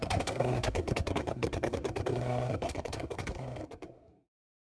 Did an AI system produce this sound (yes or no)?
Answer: yes